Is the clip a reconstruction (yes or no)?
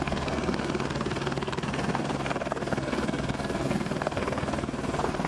yes